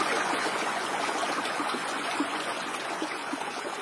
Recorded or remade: remade